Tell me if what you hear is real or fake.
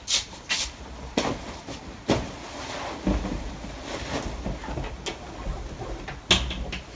real